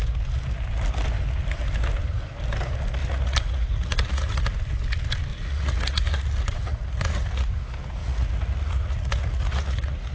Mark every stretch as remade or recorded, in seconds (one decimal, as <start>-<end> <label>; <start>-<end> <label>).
0.0-3.0 recorded; 3.0-4.4 remade; 4.4-5.3 recorded; 5.3-7.5 remade; 7.5-8.0 recorded; 8.0-10.1 remade